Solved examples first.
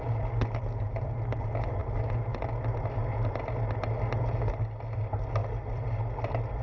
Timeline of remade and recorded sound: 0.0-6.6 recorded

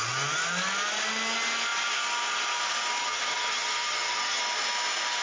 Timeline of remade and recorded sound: 0.0-3.0 recorded; 3.0-4.4 remade; 4.4-5.2 recorded